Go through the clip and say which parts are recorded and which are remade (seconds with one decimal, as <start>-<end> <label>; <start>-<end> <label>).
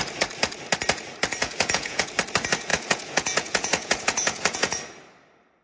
0.0-1.4 recorded; 1.4-2.1 remade; 2.1-2.7 recorded; 2.7-4.8 remade; 4.8-5.6 recorded